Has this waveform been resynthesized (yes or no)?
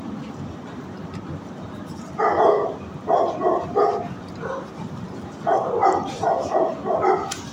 no